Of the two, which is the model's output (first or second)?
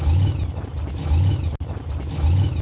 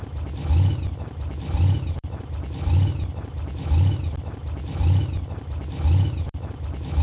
second